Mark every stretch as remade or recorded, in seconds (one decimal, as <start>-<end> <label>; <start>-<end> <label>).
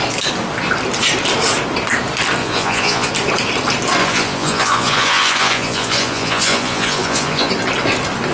0.0-2.4 recorded; 2.4-3.1 remade; 3.1-4.0 recorded; 4.0-7.5 remade; 7.5-8.3 recorded